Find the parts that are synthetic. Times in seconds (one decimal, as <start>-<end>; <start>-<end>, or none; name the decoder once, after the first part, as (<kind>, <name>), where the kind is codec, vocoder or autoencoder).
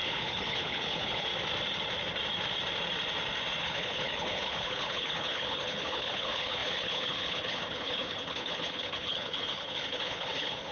0.0-1.3 (codec, HILCodec); 3.6-10.7